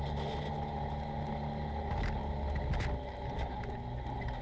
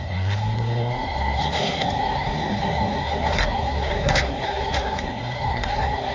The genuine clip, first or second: first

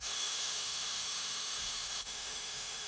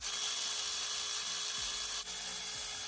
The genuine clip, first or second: second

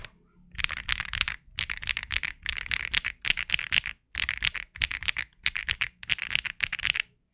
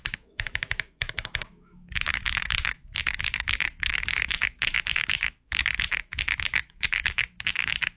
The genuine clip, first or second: first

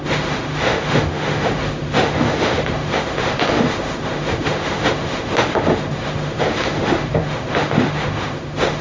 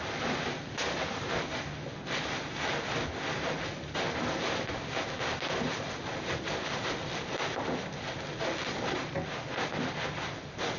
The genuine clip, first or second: second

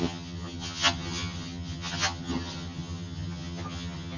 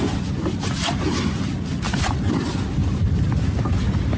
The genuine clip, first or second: second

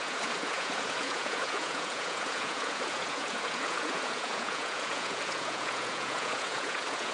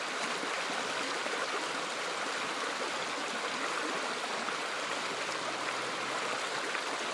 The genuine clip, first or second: second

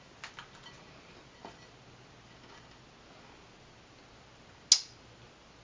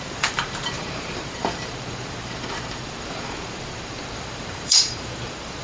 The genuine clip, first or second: first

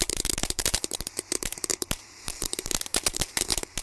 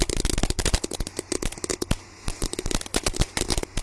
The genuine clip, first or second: second